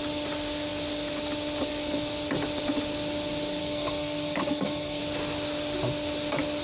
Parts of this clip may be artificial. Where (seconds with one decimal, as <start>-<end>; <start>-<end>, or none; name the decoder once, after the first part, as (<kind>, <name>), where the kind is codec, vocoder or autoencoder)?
3.6-5.0 (codec, SNAC)